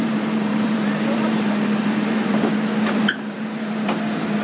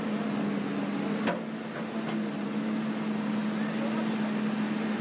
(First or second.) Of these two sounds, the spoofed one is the first